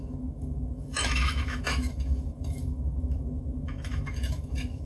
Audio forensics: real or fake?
fake